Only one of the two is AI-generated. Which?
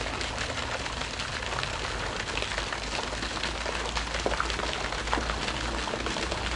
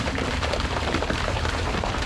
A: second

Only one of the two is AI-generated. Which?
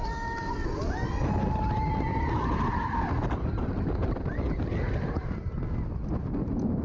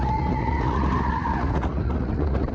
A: second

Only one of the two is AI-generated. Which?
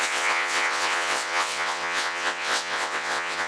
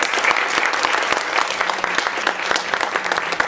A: first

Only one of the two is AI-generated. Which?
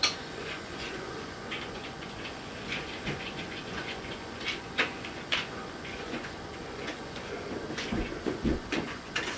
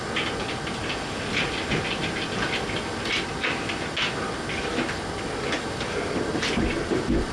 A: first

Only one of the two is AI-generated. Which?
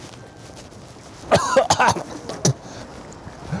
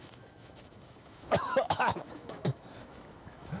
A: second